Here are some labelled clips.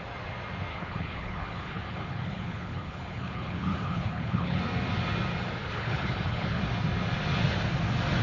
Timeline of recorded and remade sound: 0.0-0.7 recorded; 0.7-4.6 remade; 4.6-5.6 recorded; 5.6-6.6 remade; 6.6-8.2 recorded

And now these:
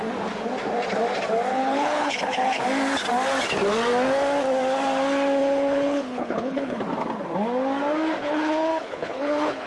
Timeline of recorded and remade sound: 0.0-1.5 recorded; 1.5-2.6 remade; 2.6-5.4 recorded; 5.4-6.8 remade; 6.8-8.2 recorded; 8.2-9.7 remade